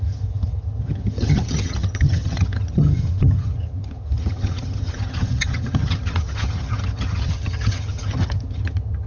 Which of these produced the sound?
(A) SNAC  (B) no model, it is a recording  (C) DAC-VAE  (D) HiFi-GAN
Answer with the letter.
D